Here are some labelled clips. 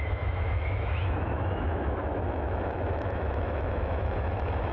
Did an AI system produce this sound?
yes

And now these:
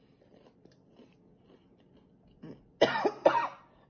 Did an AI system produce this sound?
no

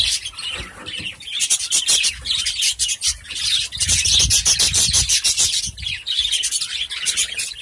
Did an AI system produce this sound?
no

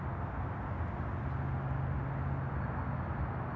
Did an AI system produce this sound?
no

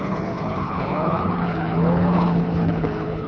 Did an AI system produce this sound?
yes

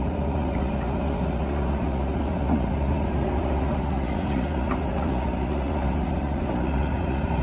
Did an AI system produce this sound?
yes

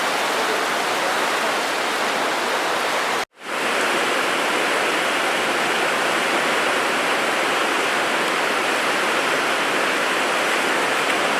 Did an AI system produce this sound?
no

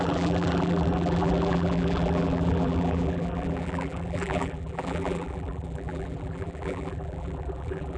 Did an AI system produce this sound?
yes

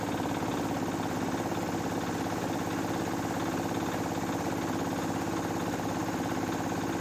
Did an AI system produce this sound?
no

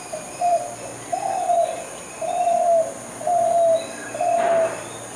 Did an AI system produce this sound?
no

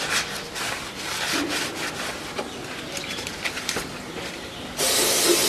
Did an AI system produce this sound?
yes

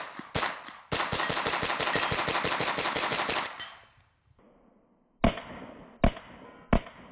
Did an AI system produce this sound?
no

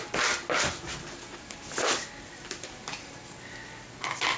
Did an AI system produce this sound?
no